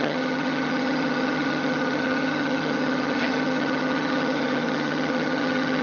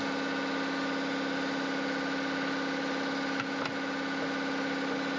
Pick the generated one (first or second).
first